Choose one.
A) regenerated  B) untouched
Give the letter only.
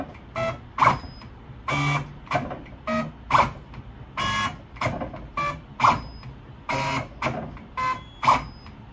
B